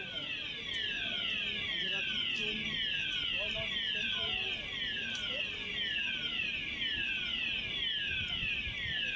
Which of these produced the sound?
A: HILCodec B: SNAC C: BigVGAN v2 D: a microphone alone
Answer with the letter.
D